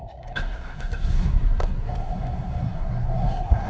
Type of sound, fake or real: fake